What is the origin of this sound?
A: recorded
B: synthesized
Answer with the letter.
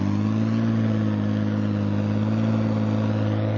A